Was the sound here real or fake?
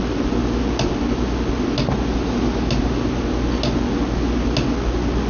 real